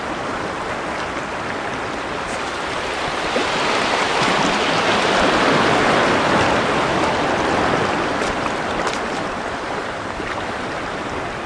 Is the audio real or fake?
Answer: real